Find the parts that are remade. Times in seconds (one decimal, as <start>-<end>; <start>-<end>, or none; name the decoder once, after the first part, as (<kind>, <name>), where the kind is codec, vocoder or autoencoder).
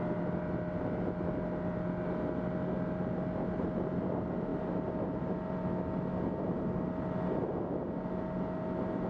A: none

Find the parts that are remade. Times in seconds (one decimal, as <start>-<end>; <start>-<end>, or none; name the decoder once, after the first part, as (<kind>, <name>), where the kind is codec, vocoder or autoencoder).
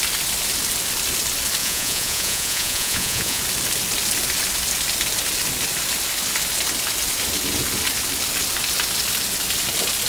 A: 1.6-3.4 (vocoder, Vocos)